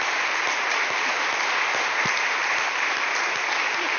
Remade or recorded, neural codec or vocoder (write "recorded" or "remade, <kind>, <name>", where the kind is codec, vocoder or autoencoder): recorded